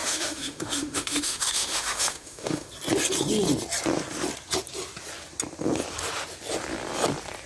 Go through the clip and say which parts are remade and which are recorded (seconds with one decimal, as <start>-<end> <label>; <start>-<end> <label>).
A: 0.0-2.7 remade; 2.7-7.5 recorded